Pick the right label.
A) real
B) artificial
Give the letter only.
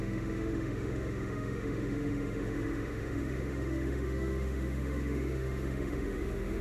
B